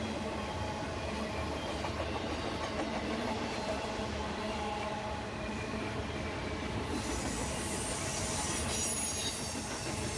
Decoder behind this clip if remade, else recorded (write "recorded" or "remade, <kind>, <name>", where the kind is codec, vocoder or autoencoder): recorded